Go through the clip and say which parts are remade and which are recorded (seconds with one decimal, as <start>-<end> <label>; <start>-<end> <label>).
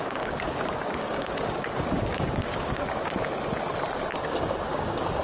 0.0-3.1 remade; 3.1-4.1 recorded; 4.1-5.2 remade